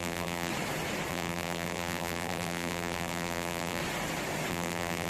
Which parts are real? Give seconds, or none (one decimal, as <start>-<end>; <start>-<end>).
0.5-1.1; 3.8-4.5